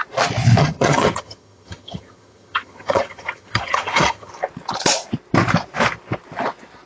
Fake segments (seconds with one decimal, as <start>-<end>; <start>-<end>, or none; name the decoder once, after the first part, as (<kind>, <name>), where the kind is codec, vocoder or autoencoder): 0.6-4.3 (vocoder, HiFi-GAN)